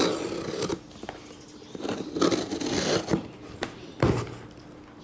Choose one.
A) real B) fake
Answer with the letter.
A